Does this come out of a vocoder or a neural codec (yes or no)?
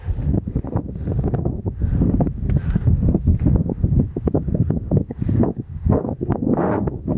yes